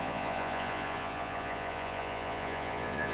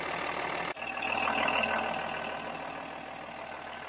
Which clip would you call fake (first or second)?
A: first